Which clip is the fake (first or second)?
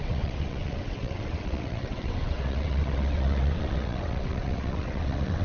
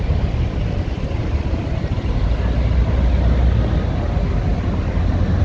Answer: first